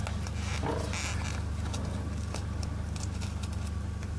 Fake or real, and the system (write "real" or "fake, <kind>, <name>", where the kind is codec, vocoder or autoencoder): real